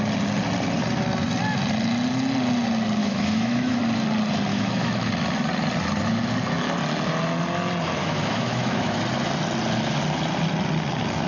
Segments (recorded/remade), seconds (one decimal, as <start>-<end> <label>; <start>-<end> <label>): 0.0-3.0 recorded; 3.0-3.8 remade; 3.8-4.5 recorded; 4.5-5.1 remade; 5.1-8.0 recorded; 8.0-9.0 remade; 9.0-11.3 recorded